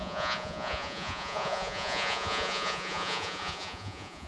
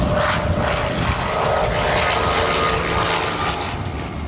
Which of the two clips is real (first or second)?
second